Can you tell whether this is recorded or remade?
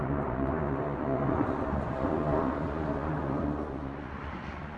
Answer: remade